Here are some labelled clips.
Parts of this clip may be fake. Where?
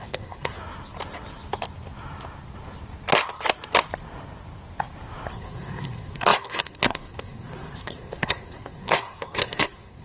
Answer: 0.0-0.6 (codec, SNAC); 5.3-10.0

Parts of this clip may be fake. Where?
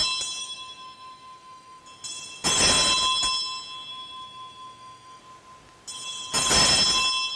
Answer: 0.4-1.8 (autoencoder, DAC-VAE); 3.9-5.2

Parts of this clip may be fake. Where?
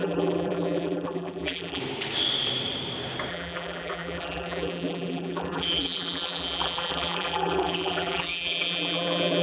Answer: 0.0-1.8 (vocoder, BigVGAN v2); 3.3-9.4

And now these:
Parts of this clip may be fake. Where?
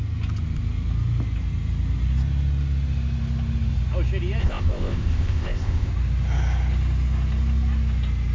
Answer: 4.4-5.9 (codec, ZipCodec)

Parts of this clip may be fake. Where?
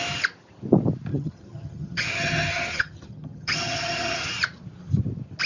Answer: 1.1-4.3 (vocoder, HiFi-GAN)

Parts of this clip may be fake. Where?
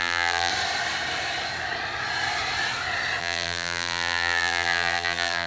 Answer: 0.0-0.5 (vocoder, BigVGAN v2); 3.2-5.5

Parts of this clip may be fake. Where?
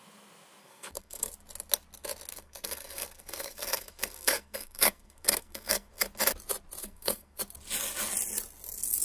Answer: 0.6-1.3 (codec, SNAC); 2.3-5.9; 6.8-7.4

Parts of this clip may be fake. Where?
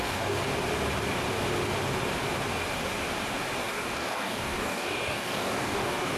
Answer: 0.0-0.4 (codec, DAC); 3.6-6.2